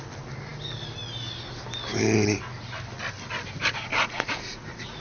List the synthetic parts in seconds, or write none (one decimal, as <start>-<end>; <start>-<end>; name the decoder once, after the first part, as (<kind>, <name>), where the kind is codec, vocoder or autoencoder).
3.9-5.0 (vocoder, Vocos)